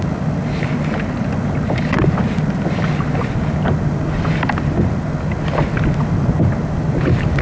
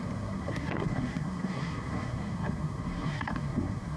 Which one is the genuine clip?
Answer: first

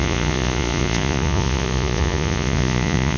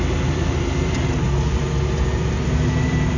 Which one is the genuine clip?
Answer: second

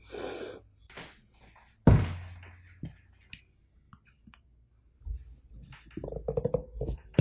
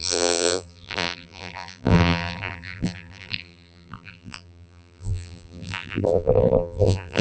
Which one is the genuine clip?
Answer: first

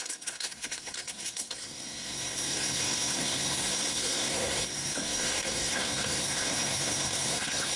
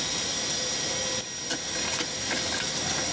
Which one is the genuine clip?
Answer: second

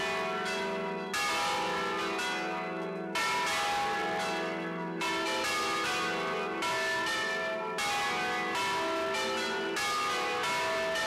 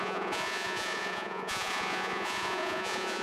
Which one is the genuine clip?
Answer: first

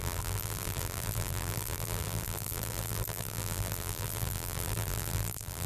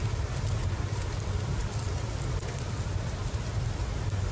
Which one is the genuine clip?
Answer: second